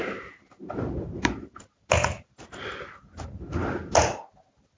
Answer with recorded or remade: recorded